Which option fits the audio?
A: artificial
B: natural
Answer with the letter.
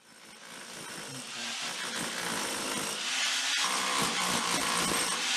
B